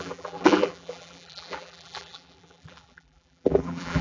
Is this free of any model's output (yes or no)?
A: no